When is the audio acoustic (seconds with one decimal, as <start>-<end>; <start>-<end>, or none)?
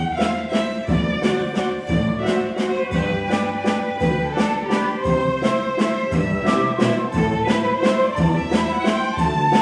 0.0-0.8; 1.6-5.2; 8.8-9.6